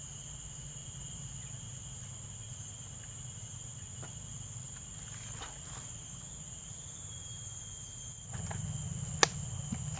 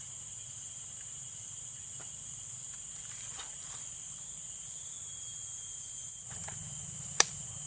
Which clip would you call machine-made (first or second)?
second